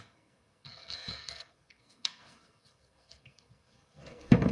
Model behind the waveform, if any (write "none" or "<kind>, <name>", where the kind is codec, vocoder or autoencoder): codec, SNAC